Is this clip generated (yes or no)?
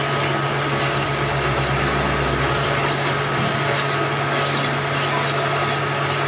no